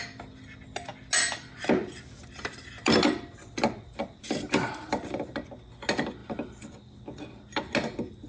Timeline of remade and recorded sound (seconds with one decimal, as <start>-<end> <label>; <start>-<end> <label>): 0.0-2.2 recorded; 2.2-5.3 remade; 5.3-6.2 recorded; 6.2-7.0 remade; 7.0-8.3 recorded